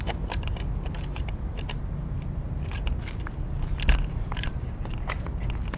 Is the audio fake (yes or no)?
no